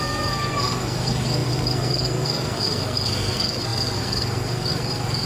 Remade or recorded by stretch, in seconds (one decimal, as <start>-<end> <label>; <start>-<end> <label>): 0.0-5.3 remade